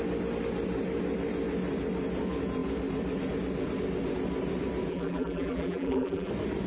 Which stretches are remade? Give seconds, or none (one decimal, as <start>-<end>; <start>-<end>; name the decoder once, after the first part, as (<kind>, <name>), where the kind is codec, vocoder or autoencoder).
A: 4.9-6.3 (vocoder, BigVGAN v2)